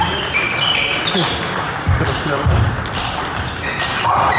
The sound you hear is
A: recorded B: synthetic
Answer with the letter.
A